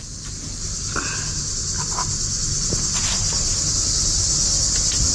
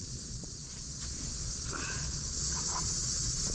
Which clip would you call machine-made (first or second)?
second